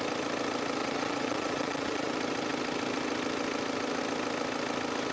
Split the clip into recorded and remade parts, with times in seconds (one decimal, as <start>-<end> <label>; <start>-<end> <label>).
0.0-0.8 recorded; 0.8-2.1 remade; 2.1-5.1 recorded

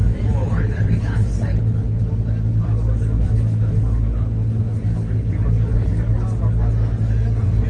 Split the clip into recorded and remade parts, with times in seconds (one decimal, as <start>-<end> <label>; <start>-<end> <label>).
0.0-0.4 recorded; 0.4-2.0 remade; 2.0-7.7 recorded

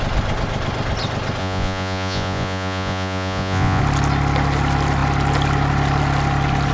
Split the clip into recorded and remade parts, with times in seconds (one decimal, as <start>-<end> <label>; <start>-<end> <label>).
0.0-1.4 recorded; 1.4-3.8 remade; 3.8-6.7 recorded

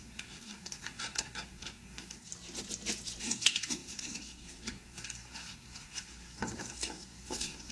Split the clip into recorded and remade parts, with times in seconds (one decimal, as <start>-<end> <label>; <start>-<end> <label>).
0.0-2.3 remade; 2.3-3.2 recorded; 3.2-7.7 remade

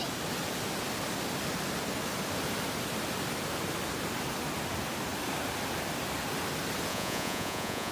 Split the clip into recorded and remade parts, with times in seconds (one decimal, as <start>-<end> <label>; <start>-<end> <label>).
0.0-6.9 recorded; 6.9-7.9 remade

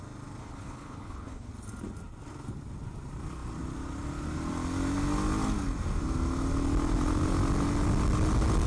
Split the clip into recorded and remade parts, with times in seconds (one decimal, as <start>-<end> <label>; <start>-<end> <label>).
0.0-0.4 recorded; 0.4-1.5 remade; 1.5-8.7 recorded